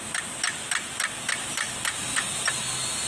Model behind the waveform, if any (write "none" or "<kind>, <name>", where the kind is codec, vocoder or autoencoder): none